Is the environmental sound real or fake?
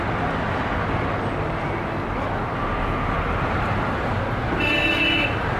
real